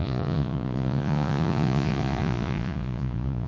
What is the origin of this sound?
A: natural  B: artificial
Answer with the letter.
B